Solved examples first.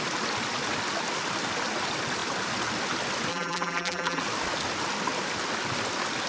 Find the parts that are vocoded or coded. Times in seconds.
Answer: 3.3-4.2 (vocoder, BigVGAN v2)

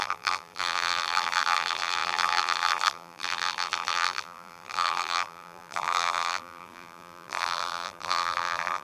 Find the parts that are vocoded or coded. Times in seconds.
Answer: 0.0-8.8 (vocoder, BigVGAN v2)